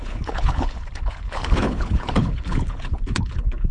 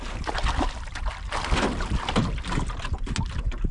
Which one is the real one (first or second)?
second